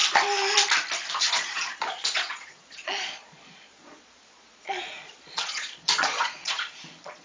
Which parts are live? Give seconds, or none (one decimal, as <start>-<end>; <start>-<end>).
0.0-1.2